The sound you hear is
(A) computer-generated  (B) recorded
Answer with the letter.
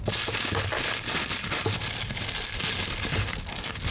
B